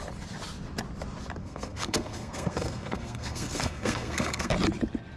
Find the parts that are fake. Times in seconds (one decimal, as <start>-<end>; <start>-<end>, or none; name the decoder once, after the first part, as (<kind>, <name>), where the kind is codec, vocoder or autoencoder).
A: 1.4-4.5 (codec, SNAC)